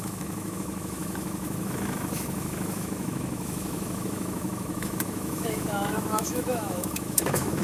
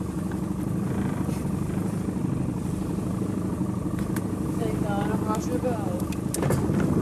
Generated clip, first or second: first